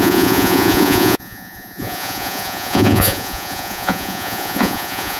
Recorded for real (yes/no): no